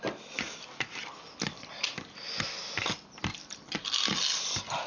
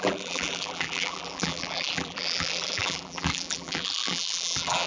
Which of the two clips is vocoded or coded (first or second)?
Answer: second